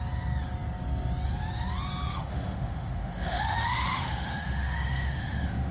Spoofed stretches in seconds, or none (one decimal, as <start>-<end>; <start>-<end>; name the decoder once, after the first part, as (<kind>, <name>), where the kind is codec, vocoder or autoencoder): 2.1-5.7 (autoencoder, DAC-VAE)